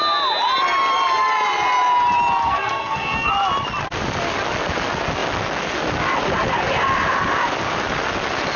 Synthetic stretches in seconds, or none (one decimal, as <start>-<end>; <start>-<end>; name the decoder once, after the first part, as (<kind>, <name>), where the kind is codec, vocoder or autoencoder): 2.4-3.3 (codec, SNAC)